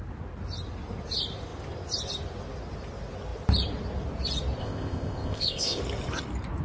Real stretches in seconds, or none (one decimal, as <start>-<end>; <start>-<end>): 0.0-4.6; 5.8-6.6